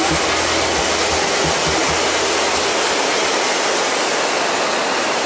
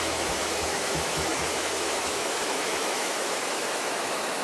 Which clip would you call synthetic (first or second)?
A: second